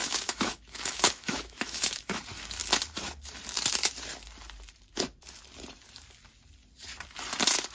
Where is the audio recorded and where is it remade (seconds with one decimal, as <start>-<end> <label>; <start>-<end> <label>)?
0.0-2.2 remade; 2.2-7.7 recorded